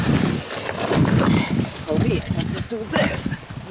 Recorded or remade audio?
recorded